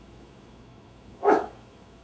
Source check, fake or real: fake